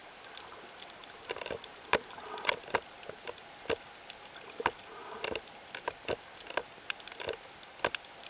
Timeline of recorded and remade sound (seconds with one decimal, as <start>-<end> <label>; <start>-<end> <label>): 0.0-4.2 remade; 4.2-5.0 recorded; 5.0-7.9 remade; 7.9-8.3 recorded